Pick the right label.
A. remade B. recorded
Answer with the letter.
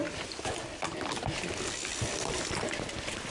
B